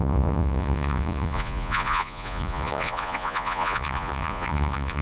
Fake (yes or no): yes